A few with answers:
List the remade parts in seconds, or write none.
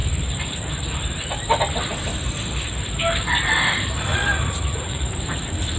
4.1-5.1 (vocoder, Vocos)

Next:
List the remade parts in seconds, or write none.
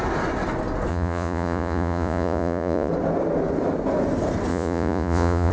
0.9-2.9 (vocoder, Vocos); 4.5-5.5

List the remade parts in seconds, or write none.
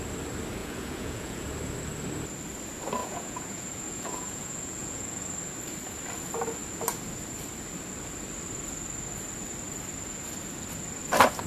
0.6-1.5 (vocoder, Vocos); 3.0-5.2